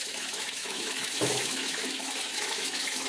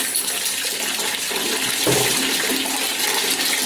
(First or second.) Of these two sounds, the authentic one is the second